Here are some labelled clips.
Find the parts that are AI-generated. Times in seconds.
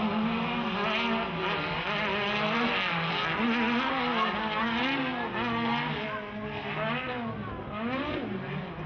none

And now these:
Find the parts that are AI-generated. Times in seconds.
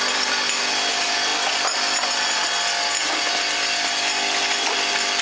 none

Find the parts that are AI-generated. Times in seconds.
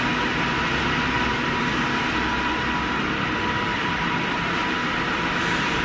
3.7-5.8 (vocoder, BigVGAN v2)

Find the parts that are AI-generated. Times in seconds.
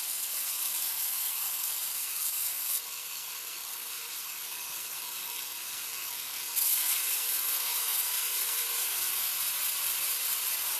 0.0-9.3 (codec, SNAC)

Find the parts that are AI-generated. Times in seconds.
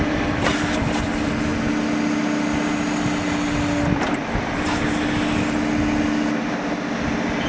none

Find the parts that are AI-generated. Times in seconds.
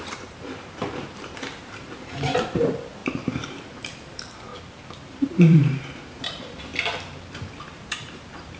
0.0-4.5 (vocoder, BigVGAN v2); 5.0-6.7; 7.6-8.6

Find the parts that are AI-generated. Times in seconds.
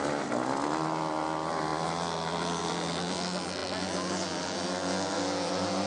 none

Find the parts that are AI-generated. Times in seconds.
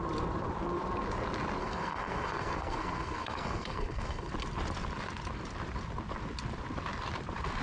1.6-4.3 (codec, SNAC)